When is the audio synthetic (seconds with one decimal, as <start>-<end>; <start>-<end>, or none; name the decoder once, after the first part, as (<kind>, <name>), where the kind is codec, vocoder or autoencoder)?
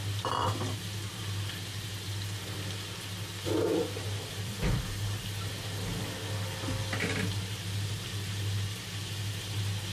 0.0-9.9 (vocoder, BigVGAN v2)